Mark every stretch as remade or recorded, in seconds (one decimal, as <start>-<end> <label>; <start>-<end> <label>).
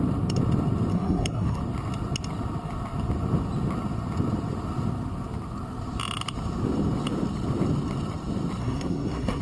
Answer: 0.0-0.9 recorded; 0.9-1.6 remade; 1.6-8.6 recorded; 8.6-9.4 remade